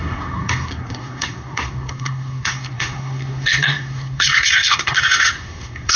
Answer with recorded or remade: remade